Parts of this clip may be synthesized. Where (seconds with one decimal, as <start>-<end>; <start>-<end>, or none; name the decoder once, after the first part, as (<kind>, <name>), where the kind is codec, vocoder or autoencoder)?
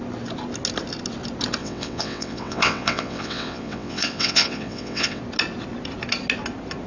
1.6-5.2 (vocoder, WaveNeXt)